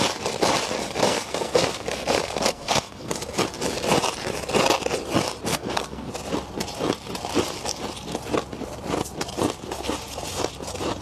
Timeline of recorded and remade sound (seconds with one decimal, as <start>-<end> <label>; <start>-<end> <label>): 0.0-1.0 recorded; 1.0-3.1 remade; 3.1-5.5 recorded; 5.5-6.1 remade; 6.1-11.0 recorded